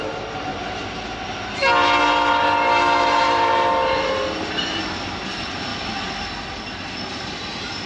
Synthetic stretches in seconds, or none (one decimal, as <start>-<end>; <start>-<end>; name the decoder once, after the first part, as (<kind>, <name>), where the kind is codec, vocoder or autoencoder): 0.0-0.5 (vocoder, BigVGAN v2); 2.0-5.7; 7.2-7.9